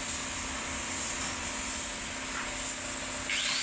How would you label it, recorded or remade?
recorded